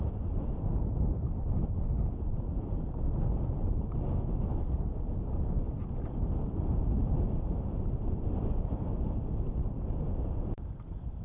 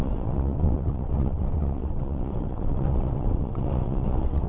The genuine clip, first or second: first